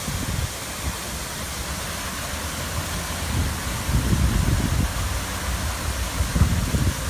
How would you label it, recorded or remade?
recorded